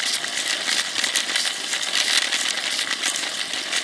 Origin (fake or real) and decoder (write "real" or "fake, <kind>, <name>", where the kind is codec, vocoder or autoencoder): real